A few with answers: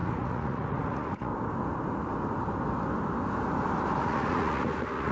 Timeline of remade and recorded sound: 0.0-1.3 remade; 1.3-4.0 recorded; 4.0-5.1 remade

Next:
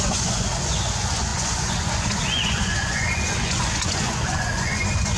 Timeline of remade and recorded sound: 0.0-5.2 remade

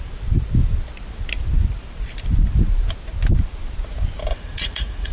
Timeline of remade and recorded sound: 0.0-4.3 recorded; 4.3-5.1 remade

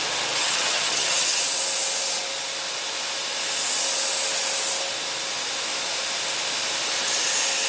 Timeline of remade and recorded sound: 0.0-0.4 recorded; 0.4-1.4 remade; 1.4-7.7 recorded

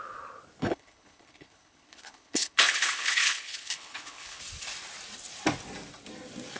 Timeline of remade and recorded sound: 0.0-0.6 recorded; 0.6-4.4 remade; 4.4-6.6 recorded

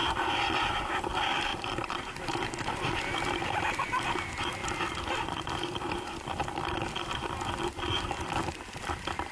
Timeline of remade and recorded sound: 0.0-1.5 recorded; 1.5-4.0 remade; 4.0-9.3 recorded

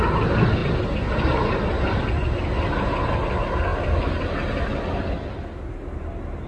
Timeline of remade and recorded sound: 0.0-6.5 recorded

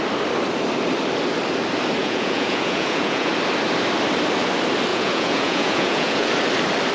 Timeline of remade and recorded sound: 0.0-2.0 recorded; 2.0-3.3 remade; 3.3-4.9 recorded; 4.9-6.3 remade; 6.3-6.9 recorded